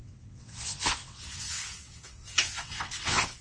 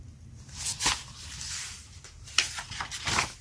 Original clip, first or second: second